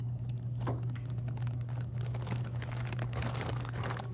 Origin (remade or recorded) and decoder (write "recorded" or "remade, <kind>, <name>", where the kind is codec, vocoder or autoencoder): remade, codec, DAC